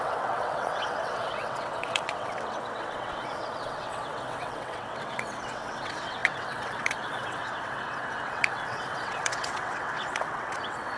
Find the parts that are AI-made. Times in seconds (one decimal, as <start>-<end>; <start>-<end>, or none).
0.0-11.0